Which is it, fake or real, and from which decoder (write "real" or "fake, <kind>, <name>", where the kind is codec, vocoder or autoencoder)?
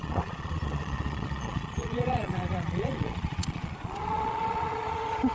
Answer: fake, vocoder, Vocos